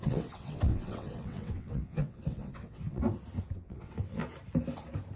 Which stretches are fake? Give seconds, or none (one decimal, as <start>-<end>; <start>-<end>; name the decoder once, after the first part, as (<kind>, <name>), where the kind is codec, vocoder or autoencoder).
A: 0.0-3.0 (vocoder, WaveNeXt); 3.5-4.2